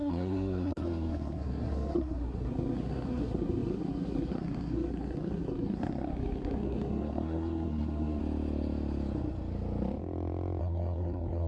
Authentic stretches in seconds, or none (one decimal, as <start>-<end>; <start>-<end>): 8.2-10.6